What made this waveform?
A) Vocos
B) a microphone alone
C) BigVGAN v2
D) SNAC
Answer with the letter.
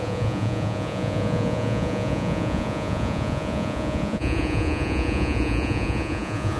A